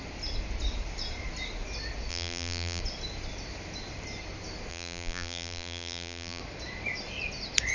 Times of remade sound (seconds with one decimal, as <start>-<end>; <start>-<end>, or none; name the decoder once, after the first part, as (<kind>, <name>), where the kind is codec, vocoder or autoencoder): 2.1-2.8 (vocoder, BigVGAN v2); 4.7-6.4